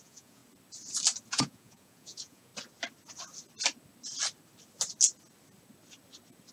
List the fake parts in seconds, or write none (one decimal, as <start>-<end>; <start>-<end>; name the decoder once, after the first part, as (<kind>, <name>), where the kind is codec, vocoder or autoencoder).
0.0-0.4 (vocoder, Vocos); 1.3-2.5